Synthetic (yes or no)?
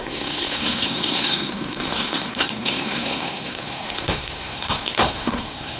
yes